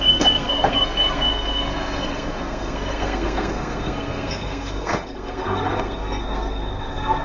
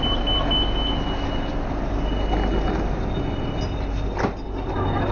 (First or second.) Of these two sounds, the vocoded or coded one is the first